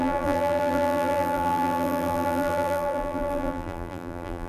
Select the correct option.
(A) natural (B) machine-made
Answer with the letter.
B